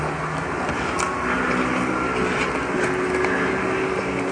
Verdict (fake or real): real